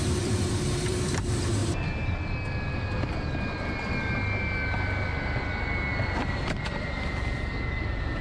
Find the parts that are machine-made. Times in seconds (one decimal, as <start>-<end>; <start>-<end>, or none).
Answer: 0.0-1.6; 6.3-8.2